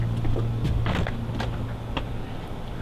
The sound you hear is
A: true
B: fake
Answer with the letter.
A